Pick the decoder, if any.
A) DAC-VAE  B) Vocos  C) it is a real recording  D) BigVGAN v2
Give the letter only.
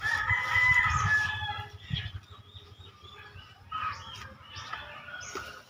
C